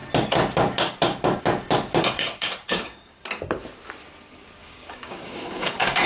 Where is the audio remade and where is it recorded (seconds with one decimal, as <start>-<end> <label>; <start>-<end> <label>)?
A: 0.0-2.0 recorded; 2.0-3.2 remade; 3.2-4.6 recorded; 4.6-6.1 remade